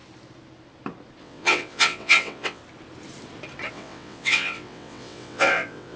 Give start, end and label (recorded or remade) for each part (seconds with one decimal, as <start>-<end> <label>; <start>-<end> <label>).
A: 0.0-1.2 recorded; 1.2-2.6 remade; 2.6-3.7 recorded; 3.7-6.0 remade